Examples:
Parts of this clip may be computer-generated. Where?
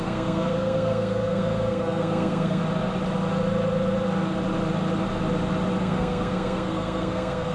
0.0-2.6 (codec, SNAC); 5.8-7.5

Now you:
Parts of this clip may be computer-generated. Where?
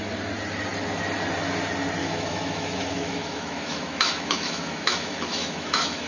2.0-6.1 (autoencoder, DAC-VAE)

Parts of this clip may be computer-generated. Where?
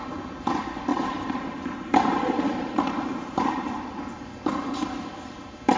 0.9-4.0 (vocoder, BigVGAN v2)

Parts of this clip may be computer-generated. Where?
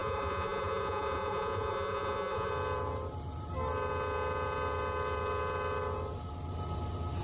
0.0-2.5 (vocoder, Vocos)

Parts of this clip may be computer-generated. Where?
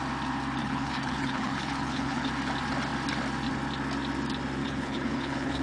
0.6-2.3 (codec, HILCodec); 4.6-5.6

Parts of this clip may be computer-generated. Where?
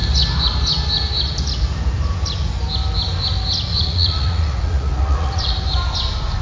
3.7-5.5 (vocoder, Vocos)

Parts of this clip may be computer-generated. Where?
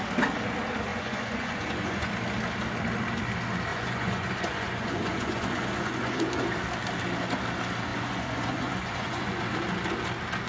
0.9-2.1 (vocoder, Vocos); 3.7-6.4; 7.9-9.4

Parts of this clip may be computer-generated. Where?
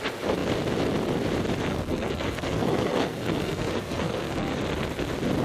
1.7-4.6 (codec, SNAC)